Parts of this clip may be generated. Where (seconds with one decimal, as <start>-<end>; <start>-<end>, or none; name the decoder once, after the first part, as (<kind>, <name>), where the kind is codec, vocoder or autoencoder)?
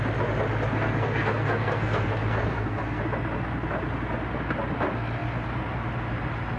0.7-3.0 (codec, SNAC)